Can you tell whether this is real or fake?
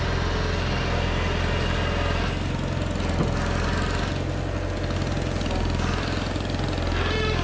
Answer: real